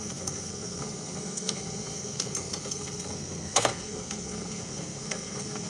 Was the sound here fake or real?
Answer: fake